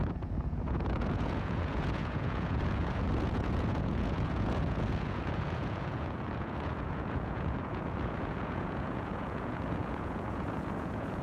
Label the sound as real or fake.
fake